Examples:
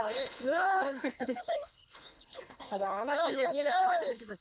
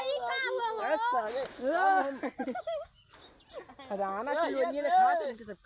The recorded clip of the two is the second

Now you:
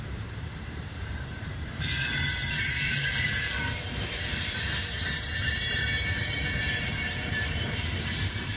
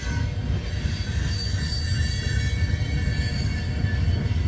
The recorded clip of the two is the second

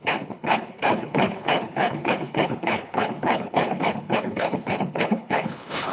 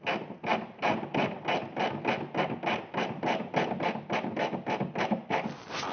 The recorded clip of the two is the second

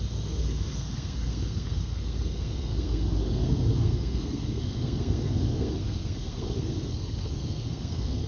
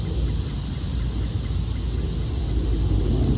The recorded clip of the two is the second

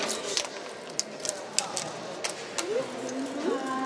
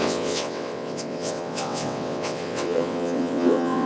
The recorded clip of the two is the first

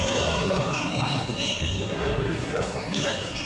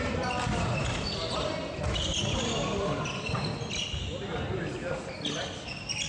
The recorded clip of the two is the second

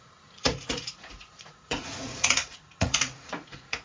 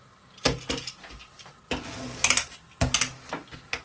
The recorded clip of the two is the second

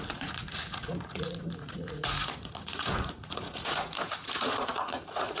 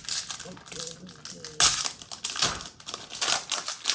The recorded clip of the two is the second